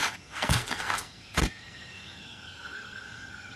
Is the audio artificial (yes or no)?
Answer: yes